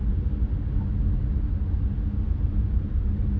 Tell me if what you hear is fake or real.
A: real